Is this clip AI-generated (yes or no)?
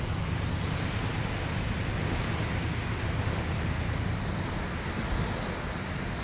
no